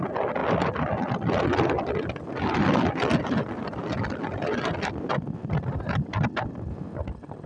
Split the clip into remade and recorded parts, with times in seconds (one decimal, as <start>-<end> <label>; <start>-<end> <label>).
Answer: 0.0-0.4 recorded; 0.4-4.9 remade; 4.9-7.5 recorded